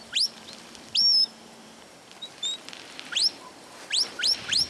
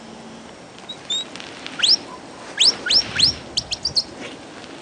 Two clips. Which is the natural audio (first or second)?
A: second